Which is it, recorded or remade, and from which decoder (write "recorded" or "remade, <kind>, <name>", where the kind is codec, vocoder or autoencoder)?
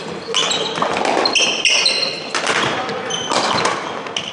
recorded